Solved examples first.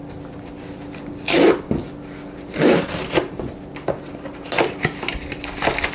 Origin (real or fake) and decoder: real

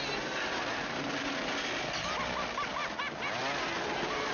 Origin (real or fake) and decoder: real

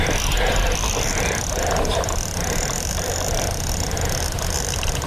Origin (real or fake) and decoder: real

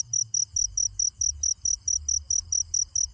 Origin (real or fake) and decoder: real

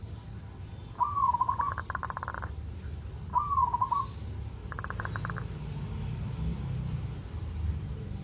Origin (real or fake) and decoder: real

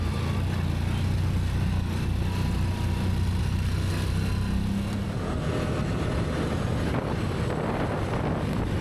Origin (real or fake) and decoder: real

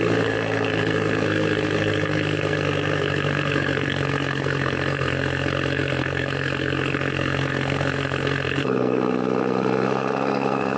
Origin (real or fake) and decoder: fake, codec, SNAC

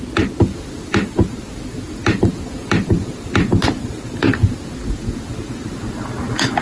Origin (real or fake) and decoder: real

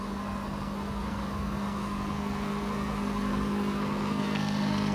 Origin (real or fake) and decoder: fake, codec, SNAC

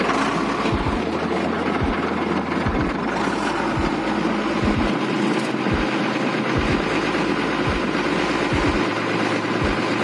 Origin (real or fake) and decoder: real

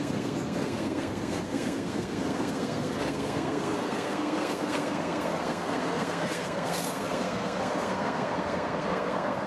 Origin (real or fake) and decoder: fake, codec, SNAC